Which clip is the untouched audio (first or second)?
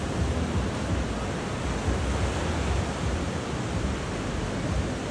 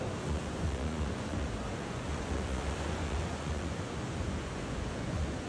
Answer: first